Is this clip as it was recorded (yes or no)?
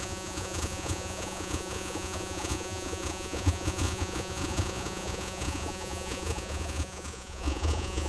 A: no